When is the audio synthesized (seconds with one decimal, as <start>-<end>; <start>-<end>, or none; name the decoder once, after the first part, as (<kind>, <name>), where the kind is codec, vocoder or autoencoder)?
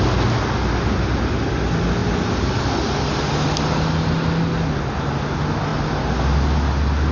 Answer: none